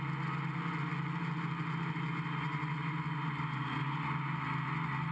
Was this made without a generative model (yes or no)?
yes